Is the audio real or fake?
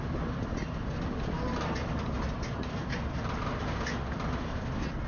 real